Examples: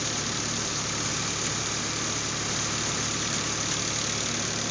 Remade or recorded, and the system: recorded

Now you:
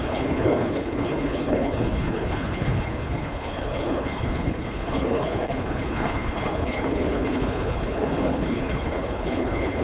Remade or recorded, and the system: remade, codec, HILCodec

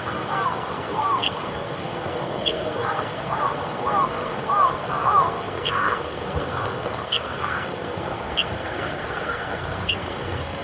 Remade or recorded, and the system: remade, codec, SNAC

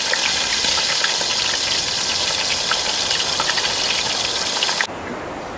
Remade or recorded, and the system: recorded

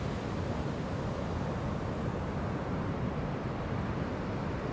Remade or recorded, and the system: recorded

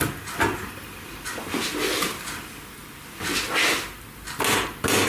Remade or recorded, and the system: recorded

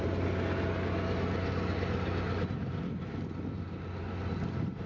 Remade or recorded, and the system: recorded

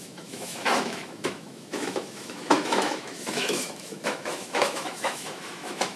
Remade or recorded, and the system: remade, autoencoder, DAC-VAE